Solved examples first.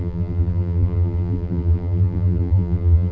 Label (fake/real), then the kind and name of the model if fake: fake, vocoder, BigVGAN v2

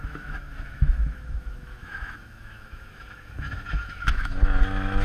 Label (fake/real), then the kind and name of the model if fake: fake, autoencoder, DAC-VAE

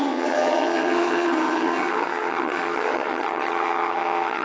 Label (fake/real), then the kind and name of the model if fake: fake, vocoder, HiFi-GAN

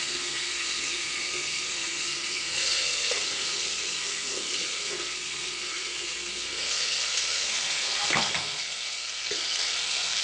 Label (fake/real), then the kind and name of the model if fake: fake, codec, SNAC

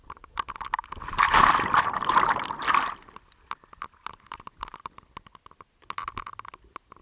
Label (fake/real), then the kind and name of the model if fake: real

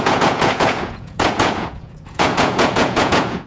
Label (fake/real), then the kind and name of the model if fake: fake, vocoder, Vocos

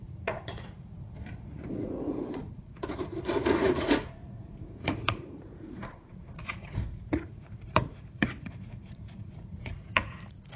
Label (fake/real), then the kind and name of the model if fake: fake, vocoder, Vocos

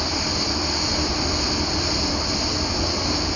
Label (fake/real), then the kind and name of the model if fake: real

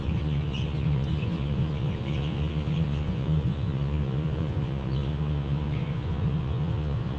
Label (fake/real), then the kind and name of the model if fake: fake, vocoder, Vocos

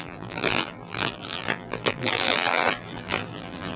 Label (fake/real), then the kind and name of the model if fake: fake, vocoder, BigVGAN v2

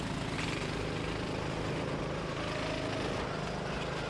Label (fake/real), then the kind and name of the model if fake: real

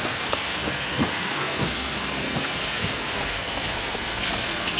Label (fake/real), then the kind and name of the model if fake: fake, codec, SNAC